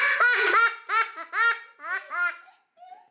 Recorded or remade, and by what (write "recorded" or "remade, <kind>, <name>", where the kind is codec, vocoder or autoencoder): recorded